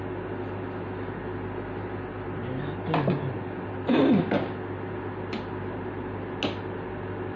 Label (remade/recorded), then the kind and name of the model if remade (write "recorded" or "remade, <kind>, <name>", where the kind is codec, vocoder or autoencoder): recorded